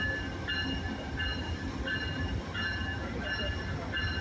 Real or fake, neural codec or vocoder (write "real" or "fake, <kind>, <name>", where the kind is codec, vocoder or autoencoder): real